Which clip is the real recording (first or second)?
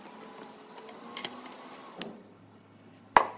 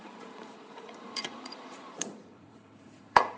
first